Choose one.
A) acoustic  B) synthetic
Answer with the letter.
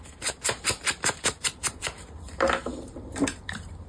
B